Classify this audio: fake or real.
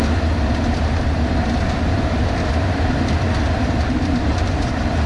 fake